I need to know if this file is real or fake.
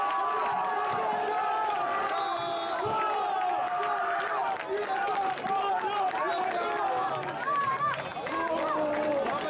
real